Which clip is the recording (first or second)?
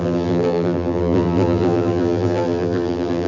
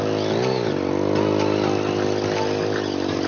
second